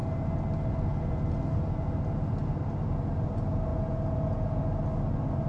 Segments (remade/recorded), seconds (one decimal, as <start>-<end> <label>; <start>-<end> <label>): 0.0-3.7 recorded; 3.7-4.6 remade; 4.6-5.5 recorded